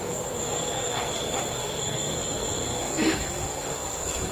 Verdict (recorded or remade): remade